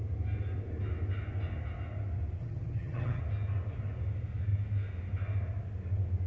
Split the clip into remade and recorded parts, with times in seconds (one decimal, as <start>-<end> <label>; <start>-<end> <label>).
0.0-2.4 recorded; 2.4-3.2 remade; 3.2-6.3 recorded